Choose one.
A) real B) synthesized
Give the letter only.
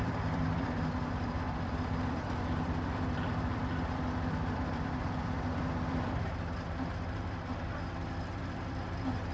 B